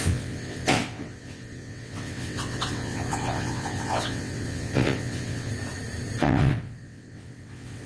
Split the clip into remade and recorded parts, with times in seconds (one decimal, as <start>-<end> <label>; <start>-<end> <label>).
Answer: 0.0-5.5 remade; 5.5-6.2 recorded; 6.2-7.9 remade